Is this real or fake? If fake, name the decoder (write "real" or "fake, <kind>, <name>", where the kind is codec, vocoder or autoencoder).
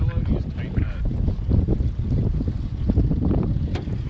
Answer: real